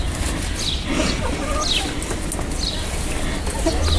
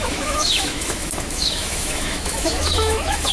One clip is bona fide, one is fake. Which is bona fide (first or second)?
first